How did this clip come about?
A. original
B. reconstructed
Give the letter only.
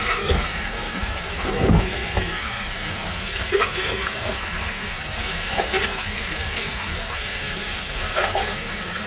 B